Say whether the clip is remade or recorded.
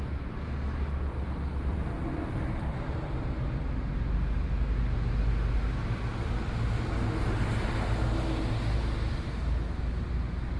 recorded